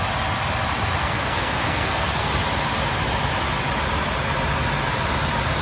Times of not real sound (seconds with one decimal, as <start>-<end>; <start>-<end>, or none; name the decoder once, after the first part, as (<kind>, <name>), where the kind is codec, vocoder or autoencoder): 1.0-2.3 (codec, SNAC)